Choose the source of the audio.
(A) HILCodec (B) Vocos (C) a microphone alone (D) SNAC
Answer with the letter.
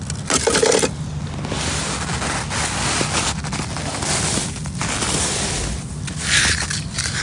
C